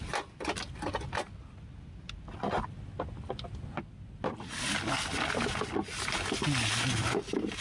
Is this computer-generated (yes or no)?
no